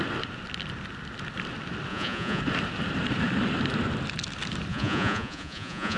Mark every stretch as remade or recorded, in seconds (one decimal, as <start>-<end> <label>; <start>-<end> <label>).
0.0-1.9 recorded; 1.9-2.4 remade; 2.4-4.7 recorded; 4.7-6.0 remade